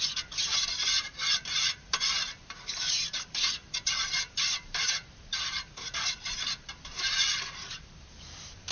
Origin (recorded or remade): remade